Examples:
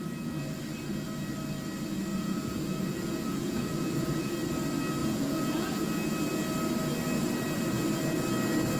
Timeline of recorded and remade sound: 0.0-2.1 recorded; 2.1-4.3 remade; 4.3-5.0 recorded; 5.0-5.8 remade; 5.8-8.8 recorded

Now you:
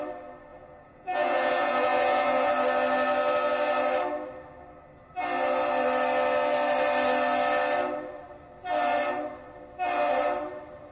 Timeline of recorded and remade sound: 0.0-0.5 recorded; 0.5-2.5 remade; 2.5-10.9 recorded

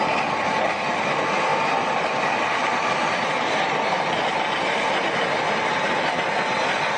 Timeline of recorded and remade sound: 0.0-7.0 recorded

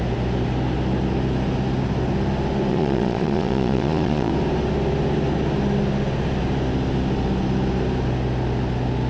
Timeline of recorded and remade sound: 0.0-2.7 recorded; 2.7-4.3 remade; 4.3-9.1 recorded

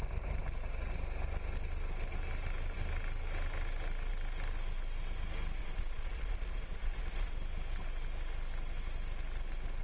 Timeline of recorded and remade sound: 0.0-5.6 recorded; 5.6-7.3 remade; 7.3-9.8 recorded

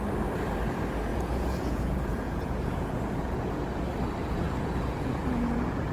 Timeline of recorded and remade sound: 0.0-1.1 recorded; 1.1-3.5 remade; 3.5-4.2 recorded; 4.2-5.9 remade